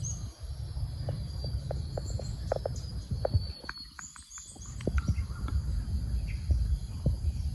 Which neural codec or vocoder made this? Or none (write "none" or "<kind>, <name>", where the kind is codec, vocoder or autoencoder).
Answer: none